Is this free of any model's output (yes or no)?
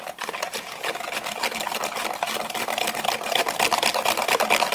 yes